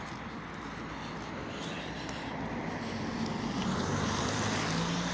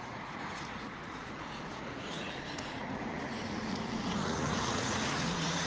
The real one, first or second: first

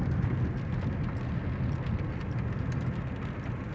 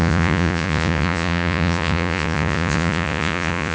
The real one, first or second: first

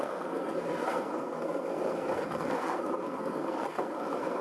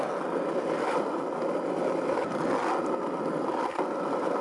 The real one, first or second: second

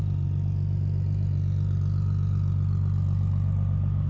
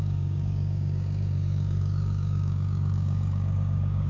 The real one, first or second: first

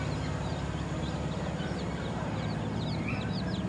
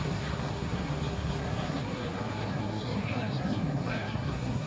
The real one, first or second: first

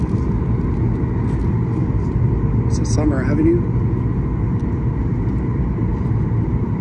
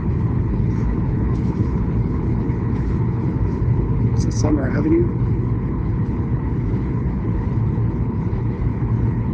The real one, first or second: first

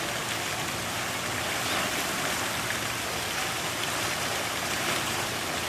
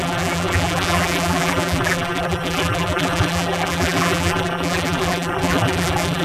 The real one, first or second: first